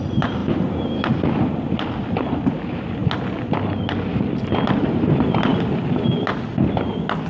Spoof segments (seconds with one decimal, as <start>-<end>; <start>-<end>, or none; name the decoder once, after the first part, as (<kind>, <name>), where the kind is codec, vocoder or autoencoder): none